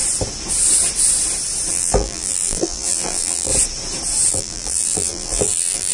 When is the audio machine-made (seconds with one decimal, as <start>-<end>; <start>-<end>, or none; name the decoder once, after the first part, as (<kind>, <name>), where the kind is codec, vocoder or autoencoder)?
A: 1.7-3.5 (vocoder, BigVGAN v2); 4.3-5.9